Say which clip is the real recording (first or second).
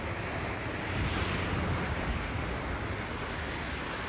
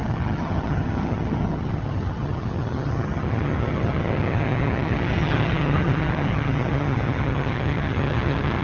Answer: first